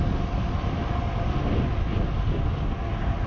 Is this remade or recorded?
recorded